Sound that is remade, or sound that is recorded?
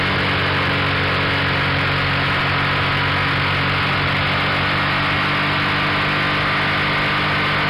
recorded